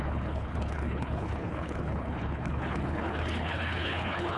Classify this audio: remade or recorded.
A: remade